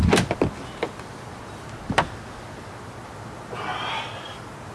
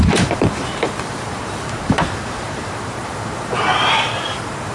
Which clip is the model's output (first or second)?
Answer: second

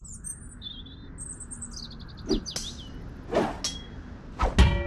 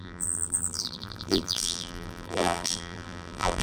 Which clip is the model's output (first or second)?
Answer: second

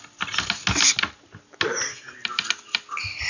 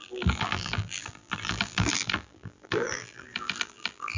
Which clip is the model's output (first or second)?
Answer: second